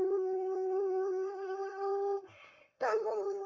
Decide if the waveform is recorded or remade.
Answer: remade